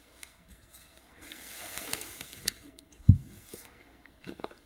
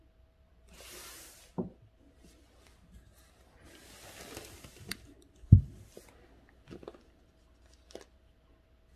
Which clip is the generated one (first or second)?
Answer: first